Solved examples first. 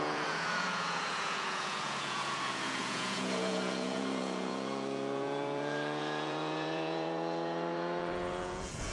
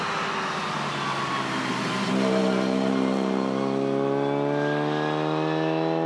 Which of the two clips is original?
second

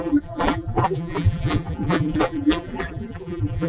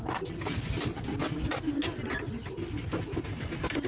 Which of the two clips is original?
second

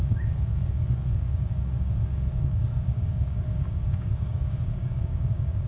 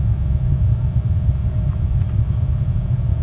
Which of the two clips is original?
second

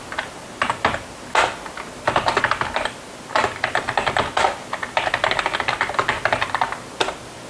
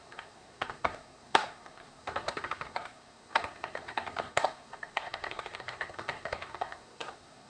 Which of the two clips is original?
first